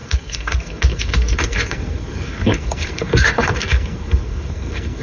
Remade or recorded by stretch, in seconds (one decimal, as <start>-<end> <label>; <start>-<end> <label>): 0.0-5.0 remade